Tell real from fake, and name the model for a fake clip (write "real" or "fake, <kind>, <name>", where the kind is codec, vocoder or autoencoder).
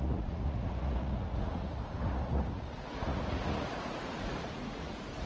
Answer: fake, vocoder, Vocos